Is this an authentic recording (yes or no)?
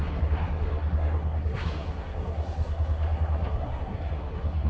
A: no